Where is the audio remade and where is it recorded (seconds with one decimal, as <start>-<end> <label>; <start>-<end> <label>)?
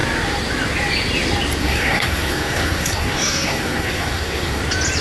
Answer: 0.0-1.6 recorded; 1.6-4.6 remade; 4.6-5.0 recorded